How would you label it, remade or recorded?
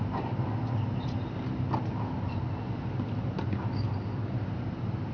recorded